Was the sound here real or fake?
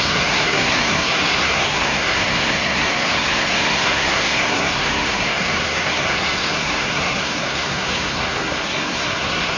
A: fake